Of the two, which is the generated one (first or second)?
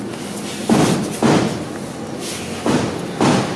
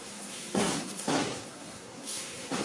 second